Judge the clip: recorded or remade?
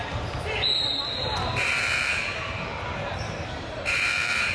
remade